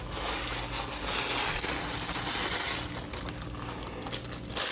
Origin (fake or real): real